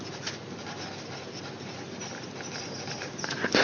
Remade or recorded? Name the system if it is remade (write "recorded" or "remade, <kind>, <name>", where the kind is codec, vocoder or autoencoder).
recorded